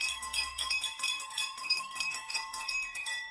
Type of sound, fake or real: fake